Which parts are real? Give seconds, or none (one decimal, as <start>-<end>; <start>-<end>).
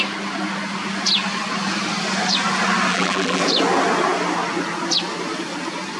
0.0-2.9; 3.4-6.0